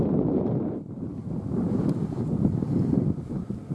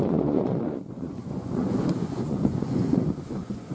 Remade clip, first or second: second